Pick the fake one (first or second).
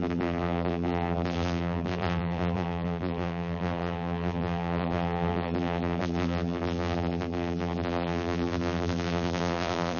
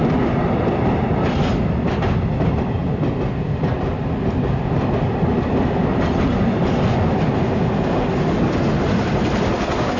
first